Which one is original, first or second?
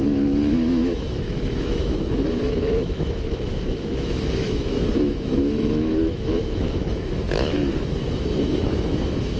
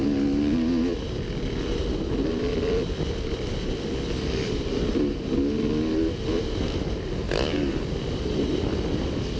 second